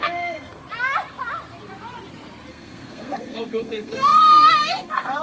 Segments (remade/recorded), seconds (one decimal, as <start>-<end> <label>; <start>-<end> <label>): 0.0-0.6 remade; 0.6-2.5 recorded; 2.5-5.2 remade